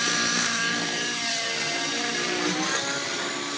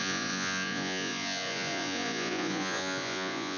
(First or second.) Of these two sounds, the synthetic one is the second